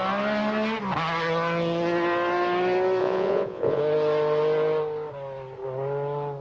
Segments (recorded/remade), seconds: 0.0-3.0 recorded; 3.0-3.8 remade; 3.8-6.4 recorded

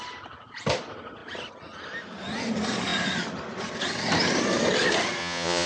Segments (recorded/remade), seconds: 0.0-5.2 recorded; 5.2-5.7 remade

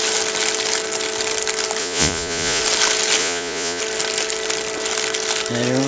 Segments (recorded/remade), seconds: 0.0-1.8 recorded; 1.8-2.6 remade; 2.6-3.2 recorded; 3.2-3.8 remade; 3.8-5.9 recorded

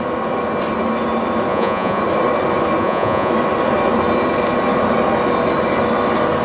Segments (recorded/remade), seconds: 0.0-1.5 recorded; 1.5-2.0 remade; 2.0-2.8 recorded; 2.8-3.3 remade; 3.3-6.4 recorded